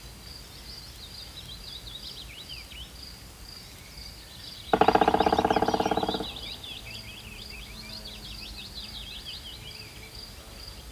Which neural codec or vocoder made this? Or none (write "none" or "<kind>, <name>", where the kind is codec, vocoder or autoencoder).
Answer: none